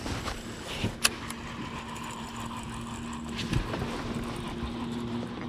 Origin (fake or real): real